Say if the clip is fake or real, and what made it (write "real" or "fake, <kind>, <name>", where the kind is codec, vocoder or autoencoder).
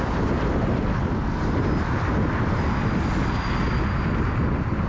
real